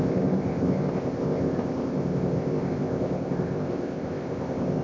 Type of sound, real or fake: fake